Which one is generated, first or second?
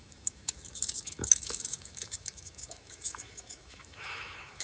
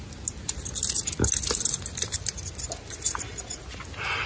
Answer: first